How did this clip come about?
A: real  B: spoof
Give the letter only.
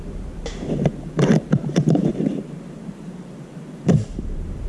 B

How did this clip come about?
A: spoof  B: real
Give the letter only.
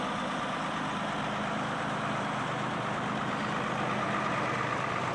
A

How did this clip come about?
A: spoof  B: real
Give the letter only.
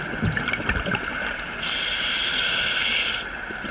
B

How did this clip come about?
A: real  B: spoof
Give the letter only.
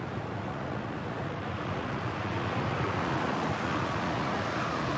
B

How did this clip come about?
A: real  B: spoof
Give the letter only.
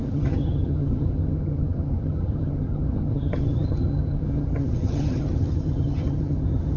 B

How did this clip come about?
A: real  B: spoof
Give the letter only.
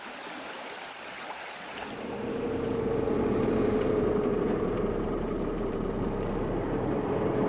B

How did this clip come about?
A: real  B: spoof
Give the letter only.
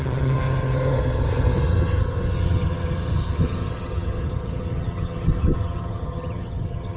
B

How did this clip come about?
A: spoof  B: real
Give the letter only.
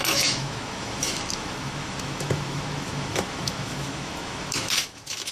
A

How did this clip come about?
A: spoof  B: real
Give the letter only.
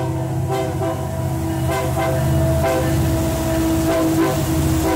B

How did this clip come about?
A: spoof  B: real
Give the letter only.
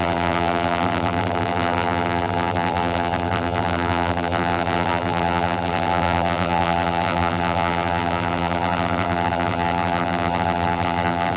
A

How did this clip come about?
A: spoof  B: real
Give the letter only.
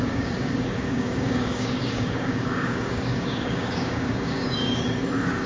A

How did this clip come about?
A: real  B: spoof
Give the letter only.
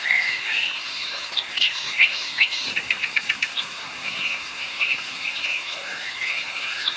B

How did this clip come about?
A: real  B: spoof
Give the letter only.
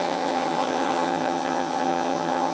B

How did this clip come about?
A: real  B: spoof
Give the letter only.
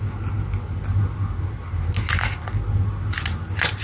A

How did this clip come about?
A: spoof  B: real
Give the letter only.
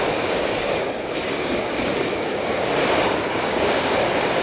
A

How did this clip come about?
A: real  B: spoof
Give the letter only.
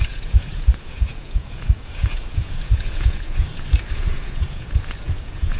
B